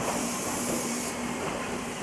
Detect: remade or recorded remade